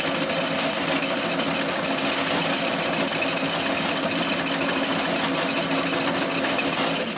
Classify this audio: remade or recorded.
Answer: recorded